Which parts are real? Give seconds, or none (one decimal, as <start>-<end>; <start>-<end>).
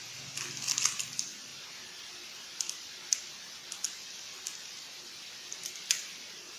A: 0.0-6.6